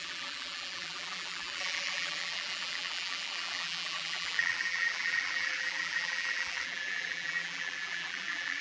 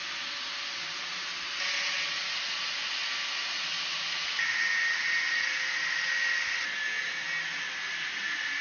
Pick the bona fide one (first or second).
second